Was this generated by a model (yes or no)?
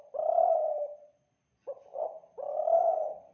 no